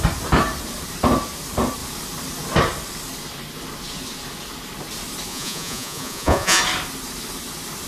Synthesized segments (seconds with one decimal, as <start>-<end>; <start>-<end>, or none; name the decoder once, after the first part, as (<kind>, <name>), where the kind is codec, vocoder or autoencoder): 5.3-6.6 (vocoder, Vocos)